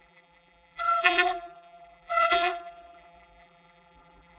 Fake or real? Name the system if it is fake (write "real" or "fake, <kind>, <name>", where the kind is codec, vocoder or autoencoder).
fake, vocoder, BigVGAN v2